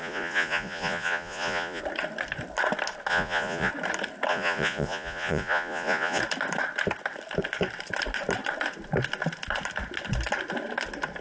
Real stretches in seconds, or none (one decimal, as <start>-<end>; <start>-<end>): 1.8-3.1; 3.7-4.3; 6.2-11.2